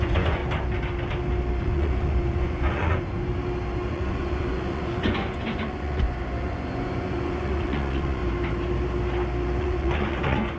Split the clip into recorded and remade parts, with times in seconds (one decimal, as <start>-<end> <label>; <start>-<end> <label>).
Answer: 0.0-0.4 remade; 0.4-1.6 recorded; 1.6-3.3 remade; 3.3-3.9 recorded; 3.9-8.2 remade; 8.2-9.6 recorded; 9.6-10.6 remade